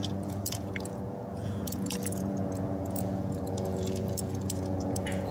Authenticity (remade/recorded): remade